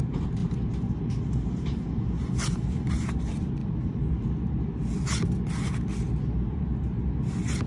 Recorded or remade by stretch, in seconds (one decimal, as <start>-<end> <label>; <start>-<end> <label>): 0.0-3.6 remade; 3.6-7.7 recorded